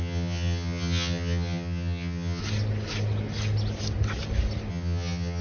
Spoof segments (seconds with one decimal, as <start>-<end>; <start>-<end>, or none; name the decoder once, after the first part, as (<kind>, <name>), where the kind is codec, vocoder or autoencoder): 0.0-2.4 (vocoder, HiFi-GAN); 4.7-5.4